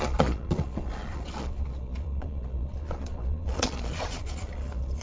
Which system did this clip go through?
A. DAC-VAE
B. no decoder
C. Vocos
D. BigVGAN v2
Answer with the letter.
C